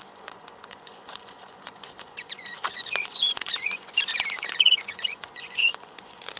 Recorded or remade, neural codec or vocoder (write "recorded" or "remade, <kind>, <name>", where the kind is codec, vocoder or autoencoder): remade, vocoder, Vocos